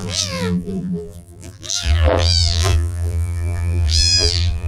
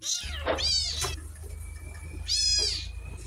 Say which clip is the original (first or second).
second